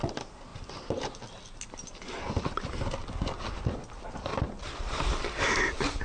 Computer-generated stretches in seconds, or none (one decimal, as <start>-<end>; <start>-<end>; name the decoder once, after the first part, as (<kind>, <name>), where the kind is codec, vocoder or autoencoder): none